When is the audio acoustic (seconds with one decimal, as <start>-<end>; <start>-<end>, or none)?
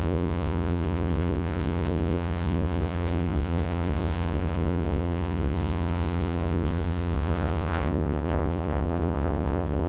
none